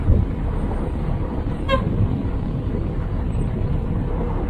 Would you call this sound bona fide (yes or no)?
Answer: yes